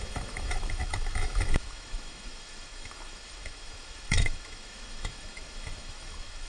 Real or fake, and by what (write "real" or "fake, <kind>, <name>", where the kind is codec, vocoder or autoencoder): fake, autoencoder, DAC-VAE